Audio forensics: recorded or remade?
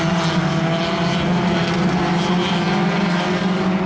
recorded